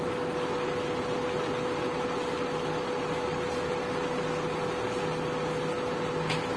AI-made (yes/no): no